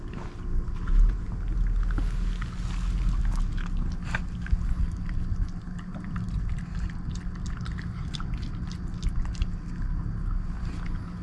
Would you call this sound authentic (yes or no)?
yes